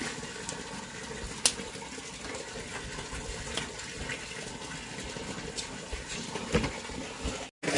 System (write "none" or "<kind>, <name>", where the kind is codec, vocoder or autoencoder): none